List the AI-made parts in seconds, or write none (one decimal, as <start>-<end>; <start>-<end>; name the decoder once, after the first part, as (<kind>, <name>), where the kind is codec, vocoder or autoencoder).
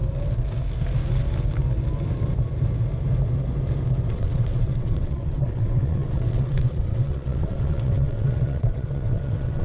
4.1-9.6 (vocoder, WaveNeXt)